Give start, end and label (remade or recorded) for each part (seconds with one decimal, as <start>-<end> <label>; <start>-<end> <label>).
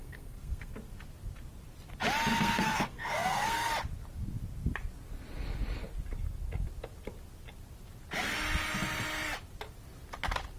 0.0-0.7 remade; 0.7-2.3 recorded; 2.3-3.7 remade; 3.7-10.6 recorded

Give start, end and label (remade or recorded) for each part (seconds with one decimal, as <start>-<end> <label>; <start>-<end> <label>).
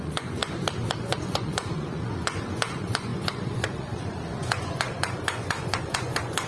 0.0-0.4 remade; 0.4-1.0 recorded; 1.0-6.5 remade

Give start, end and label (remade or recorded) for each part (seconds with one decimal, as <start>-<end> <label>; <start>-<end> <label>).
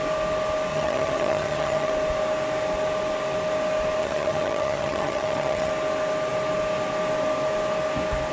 0.0-0.7 recorded; 0.7-1.9 remade; 1.9-4.0 recorded; 4.0-5.7 remade; 5.7-8.3 recorded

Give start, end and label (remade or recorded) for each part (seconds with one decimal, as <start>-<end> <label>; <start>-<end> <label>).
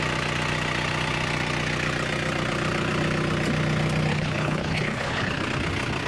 0.0-4.1 recorded; 4.1-5.3 remade; 5.3-6.1 recorded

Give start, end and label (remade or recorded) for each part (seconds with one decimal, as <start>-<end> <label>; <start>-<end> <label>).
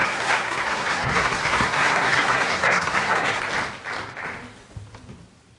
0.0-3.4 remade; 3.4-5.6 recorded